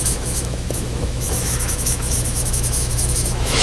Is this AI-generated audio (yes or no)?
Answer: yes